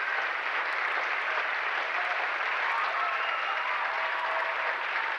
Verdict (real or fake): real